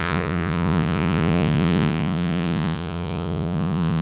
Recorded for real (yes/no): no